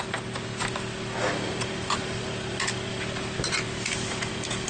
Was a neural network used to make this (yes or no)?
no